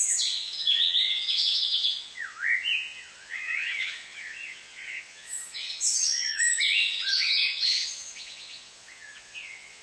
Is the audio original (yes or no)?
no